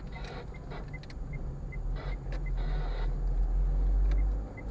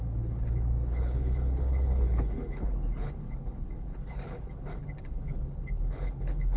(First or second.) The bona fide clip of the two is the first